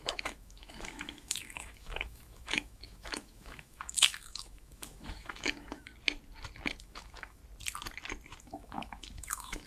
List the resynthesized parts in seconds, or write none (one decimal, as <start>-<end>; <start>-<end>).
0.0-5.9; 6.8-7.4; 8.4-9.7

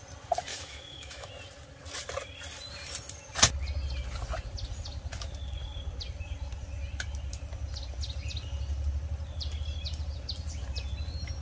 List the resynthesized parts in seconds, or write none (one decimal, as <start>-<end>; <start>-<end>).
0.5-1.3

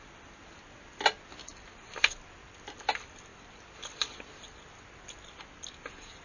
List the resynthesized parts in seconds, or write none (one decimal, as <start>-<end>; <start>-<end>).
none

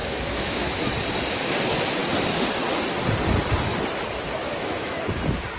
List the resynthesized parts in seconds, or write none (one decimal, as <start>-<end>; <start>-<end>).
0.0-0.8; 4.4-5.0

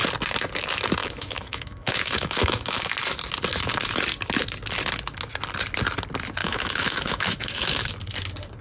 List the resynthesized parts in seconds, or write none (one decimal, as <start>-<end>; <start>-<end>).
1.0-2.8; 6.4-7.9

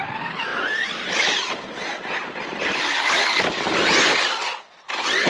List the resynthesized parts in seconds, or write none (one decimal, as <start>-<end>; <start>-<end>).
none

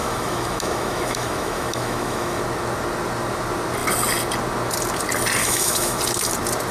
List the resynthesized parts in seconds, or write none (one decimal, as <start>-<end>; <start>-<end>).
0.0-2.4; 5.4-6.0